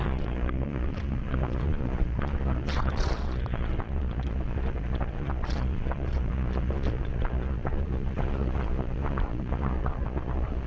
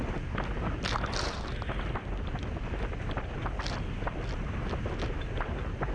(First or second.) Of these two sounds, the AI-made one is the first